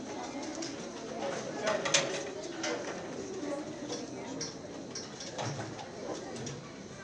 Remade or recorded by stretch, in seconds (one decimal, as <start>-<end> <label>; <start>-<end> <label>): 0.0-7.0 recorded

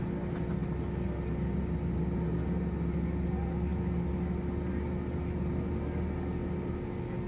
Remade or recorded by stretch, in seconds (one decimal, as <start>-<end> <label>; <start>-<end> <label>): 0.0-7.3 recorded

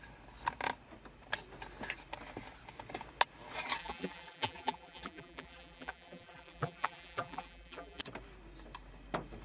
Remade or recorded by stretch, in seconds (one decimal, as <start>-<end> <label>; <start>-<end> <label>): 0.0-3.8 recorded; 3.8-8.0 remade; 8.0-9.4 recorded

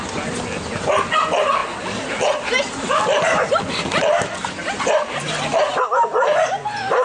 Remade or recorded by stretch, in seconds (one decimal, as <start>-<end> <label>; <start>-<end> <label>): 0.0-1.6 recorded; 1.6-5.8 remade; 5.8-7.0 recorded

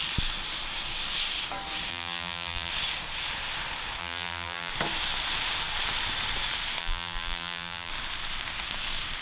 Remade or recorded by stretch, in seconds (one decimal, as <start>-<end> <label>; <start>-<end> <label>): 0.0-1.9 recorded; 1.9-2.7 remade; 2.7-4.0 recorded; 4.0-4.7 remade; 4.7-6.8 recorded; 6.8-7.9 remade; 7.9-9.2 recorded